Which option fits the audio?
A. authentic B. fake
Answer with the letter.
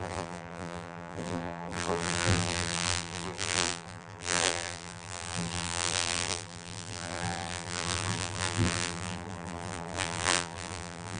B